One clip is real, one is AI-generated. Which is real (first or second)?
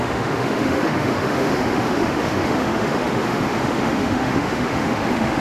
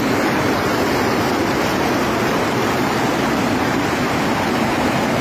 second